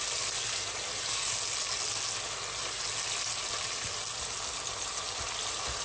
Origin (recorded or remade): recorded